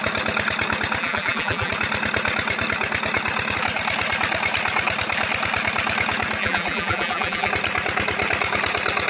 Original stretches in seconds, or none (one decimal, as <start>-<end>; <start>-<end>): 0.0-1.0; 1.7-6.4; 7.5-9.1